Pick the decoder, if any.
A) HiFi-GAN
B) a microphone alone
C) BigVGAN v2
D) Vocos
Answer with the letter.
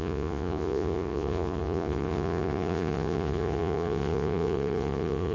D